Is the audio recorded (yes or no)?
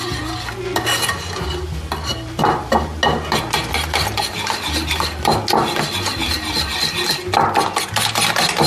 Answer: yes